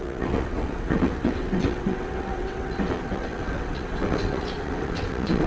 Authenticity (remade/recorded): remade